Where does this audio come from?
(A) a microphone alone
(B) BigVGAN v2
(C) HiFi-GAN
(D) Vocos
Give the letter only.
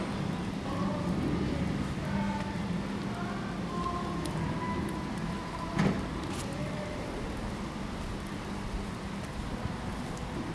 A